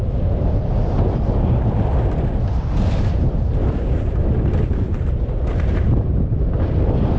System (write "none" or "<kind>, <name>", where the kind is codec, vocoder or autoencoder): none